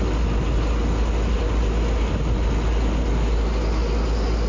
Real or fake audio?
real